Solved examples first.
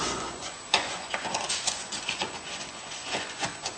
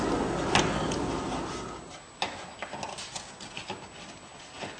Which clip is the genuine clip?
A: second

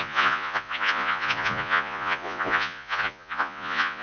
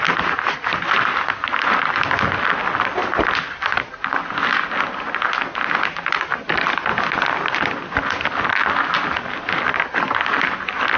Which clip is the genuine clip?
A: second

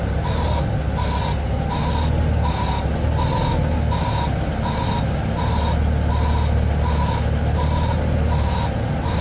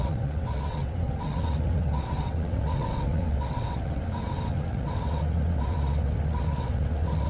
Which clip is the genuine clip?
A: first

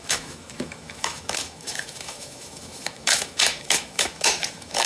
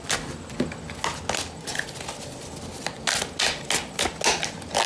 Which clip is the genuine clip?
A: second